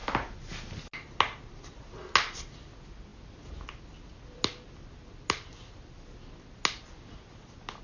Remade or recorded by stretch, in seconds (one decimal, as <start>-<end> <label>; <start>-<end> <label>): 0.0-7.8 recorded